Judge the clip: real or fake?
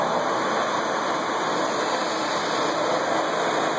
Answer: real